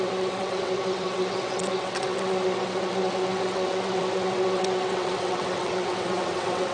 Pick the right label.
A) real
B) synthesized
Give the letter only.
B